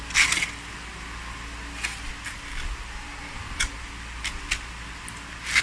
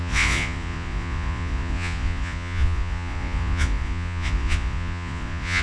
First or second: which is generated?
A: second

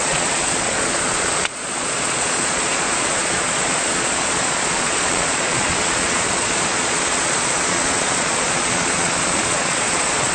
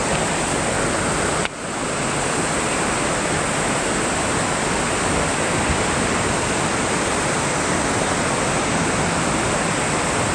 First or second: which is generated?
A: first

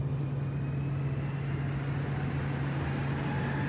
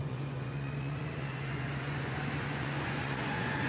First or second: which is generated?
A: second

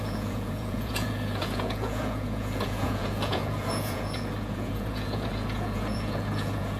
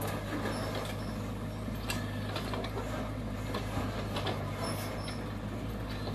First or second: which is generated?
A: first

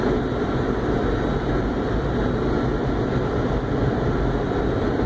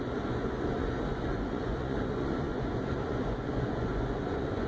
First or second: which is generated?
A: second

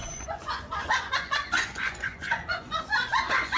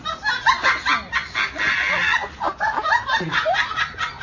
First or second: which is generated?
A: first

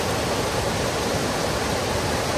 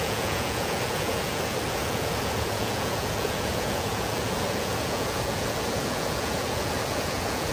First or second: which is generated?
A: second